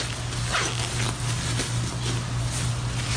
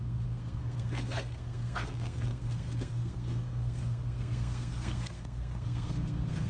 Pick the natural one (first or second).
first